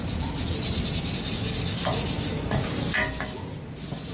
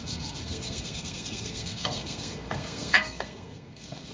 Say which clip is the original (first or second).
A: first